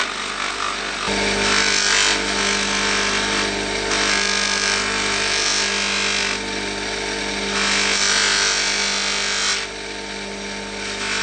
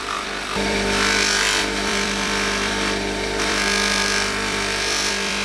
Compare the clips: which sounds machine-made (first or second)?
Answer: second